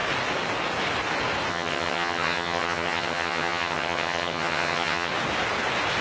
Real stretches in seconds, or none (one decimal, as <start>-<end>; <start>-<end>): 0.0-1.5; 5.1-6.0